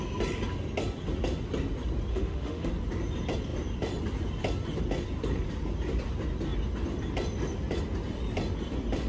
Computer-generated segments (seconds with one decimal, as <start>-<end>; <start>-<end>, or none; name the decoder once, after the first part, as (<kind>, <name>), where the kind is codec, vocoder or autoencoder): 2.1-2.7 (autoencoder, DAC-VAE)